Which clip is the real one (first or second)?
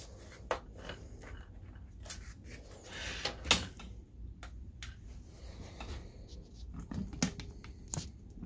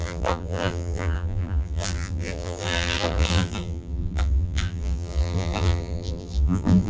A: first